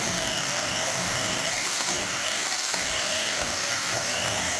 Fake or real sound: fake